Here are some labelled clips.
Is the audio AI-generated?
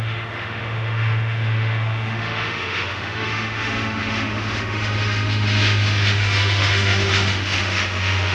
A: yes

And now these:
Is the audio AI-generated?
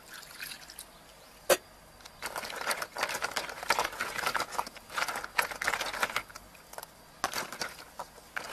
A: no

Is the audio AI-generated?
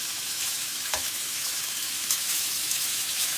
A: yes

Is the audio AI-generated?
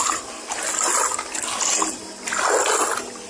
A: no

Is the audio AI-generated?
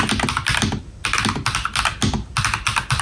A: no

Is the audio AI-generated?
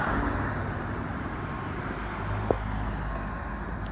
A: no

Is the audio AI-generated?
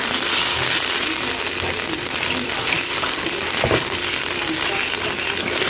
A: no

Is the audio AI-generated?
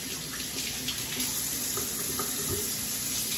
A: no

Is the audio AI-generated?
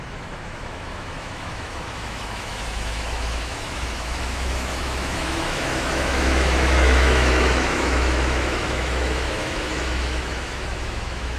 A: yes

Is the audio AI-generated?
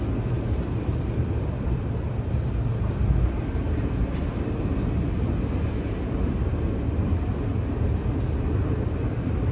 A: no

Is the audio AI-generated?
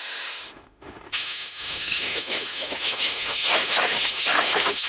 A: yes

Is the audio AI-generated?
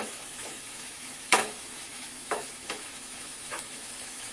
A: yes